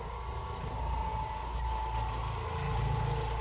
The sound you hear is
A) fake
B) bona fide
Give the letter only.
B